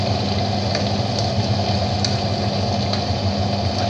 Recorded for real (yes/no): yes